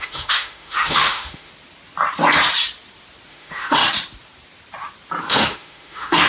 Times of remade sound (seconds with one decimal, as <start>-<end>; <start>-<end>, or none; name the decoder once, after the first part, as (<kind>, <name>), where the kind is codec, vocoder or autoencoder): 0.0-1.5 (autoencoder, DAC-VAE); 3.3-3.8; 5.2-6.3